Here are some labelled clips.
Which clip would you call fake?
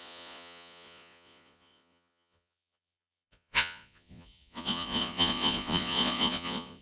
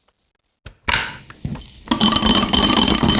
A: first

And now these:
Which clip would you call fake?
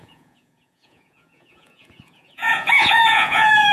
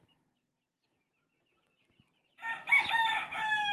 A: first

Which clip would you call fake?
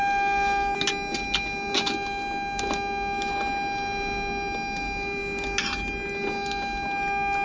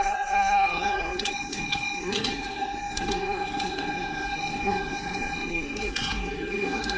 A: second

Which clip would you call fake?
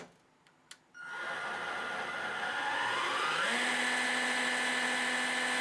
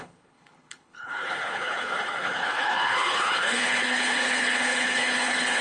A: second